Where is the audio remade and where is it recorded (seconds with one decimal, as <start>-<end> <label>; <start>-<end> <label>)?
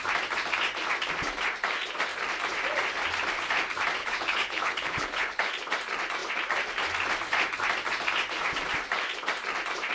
0.0-4.0 recorded; 4.0-5.5 remade; 5.5-9.9 recorded